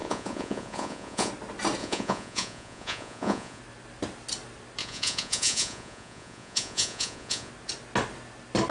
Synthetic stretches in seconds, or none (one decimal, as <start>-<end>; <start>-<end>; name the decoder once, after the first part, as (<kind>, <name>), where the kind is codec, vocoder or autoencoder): 0.0-1.3 (vocoder, Vocos); 1.8-3.6; 4.8-7.5

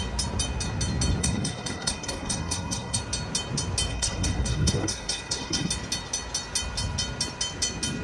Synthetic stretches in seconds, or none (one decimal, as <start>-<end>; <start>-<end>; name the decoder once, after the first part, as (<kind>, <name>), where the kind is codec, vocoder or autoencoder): 1.2-3.0 (codec, SNAC); 3.9-5.7